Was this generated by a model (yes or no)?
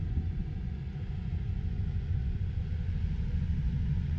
yes